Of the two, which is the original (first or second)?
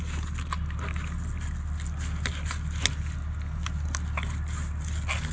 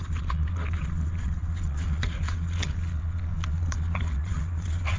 first